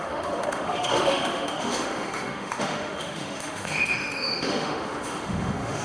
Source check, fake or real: fake